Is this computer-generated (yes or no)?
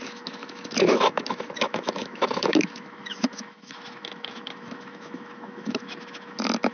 yes